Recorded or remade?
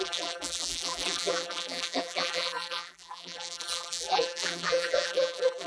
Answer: remade